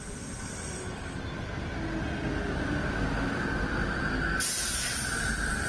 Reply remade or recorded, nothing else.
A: recorded